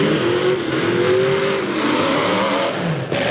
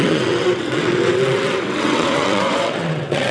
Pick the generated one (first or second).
second